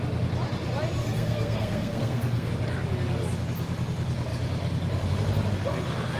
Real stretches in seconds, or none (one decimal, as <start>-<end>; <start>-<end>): 0.0-1.0; 2.5-6.2